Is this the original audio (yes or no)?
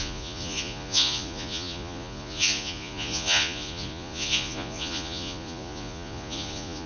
no